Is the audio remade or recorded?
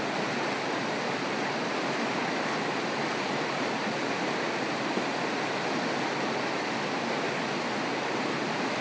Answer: recorded